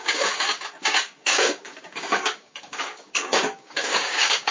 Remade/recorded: remade